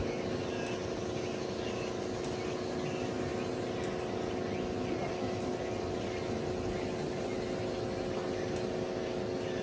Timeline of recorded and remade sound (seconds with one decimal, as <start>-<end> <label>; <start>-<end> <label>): 0.0-9.6 recorded